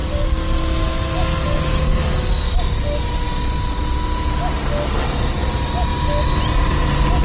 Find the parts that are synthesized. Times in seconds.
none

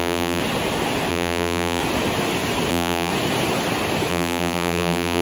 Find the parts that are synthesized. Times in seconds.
0.0-0.4 (vocoder, BigVGAN v2); 1.1-1.8; 2.7-3.1; 4.1-5.2